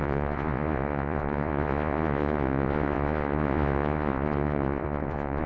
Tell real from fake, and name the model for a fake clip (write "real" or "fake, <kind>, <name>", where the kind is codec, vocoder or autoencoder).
fake, vocoder, Vocos